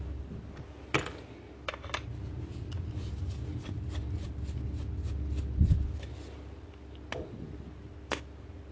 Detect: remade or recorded recorded